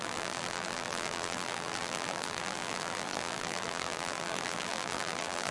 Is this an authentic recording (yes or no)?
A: no